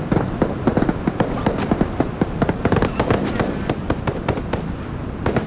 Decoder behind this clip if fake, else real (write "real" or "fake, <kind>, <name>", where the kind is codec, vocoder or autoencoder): real